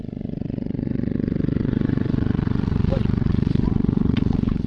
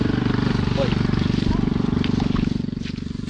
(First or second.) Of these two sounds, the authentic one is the second